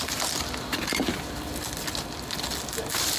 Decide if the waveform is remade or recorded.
recorded